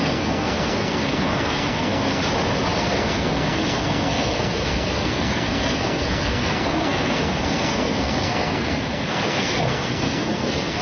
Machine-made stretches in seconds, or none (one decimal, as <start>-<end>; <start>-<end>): 0.0-2.2; 2.8-10.8